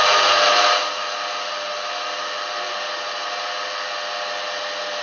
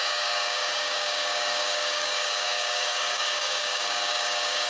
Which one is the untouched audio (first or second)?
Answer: first